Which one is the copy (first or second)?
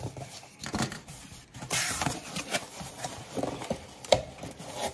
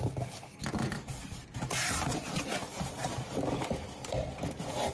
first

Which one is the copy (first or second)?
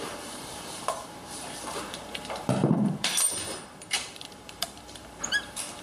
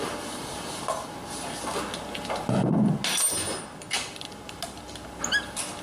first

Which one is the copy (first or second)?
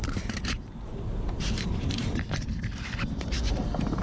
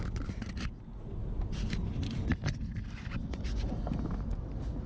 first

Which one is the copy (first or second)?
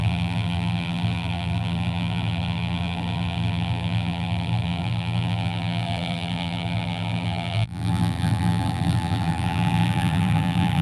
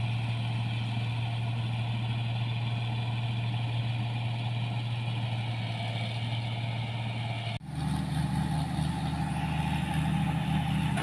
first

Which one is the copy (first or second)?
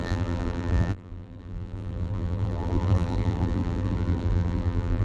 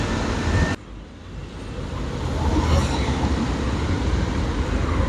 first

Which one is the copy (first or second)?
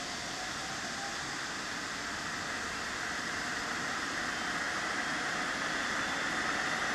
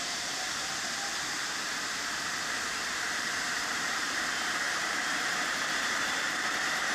second